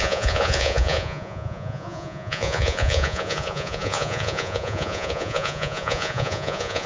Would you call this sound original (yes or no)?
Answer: no